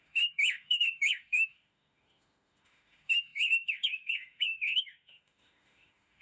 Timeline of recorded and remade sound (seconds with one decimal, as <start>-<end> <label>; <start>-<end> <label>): 0.0-6.2 remade